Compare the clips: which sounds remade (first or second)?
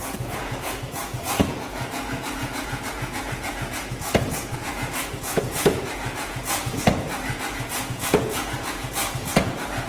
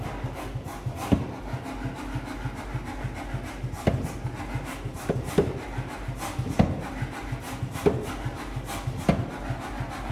first